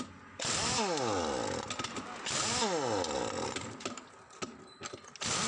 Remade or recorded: recorded